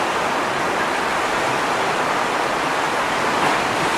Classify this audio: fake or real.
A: fake